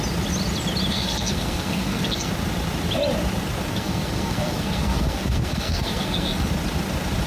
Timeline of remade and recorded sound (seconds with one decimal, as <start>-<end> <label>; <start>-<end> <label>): 0.0-0.9 recorded; 0.9-2.3 remade; 2.3-3.7 recorded; 3.7-6.5 remade; 6.5-7.3 recorded